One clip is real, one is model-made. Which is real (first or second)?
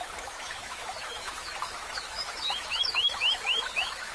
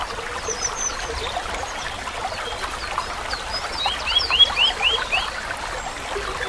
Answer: second